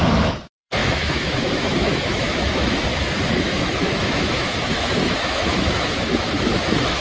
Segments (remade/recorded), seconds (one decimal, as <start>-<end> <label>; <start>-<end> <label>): 0.0-7.0 remade